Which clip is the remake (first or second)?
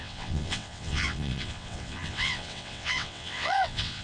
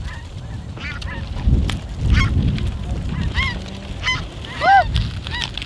first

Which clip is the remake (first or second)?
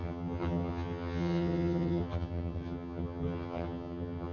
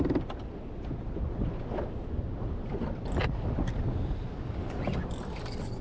first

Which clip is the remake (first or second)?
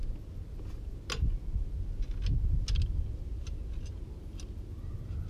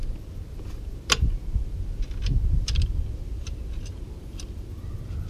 second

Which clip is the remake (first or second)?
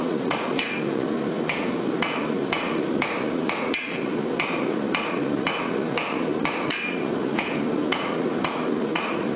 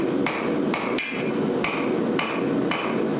first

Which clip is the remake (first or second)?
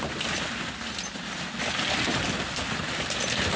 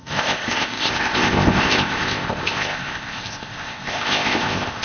second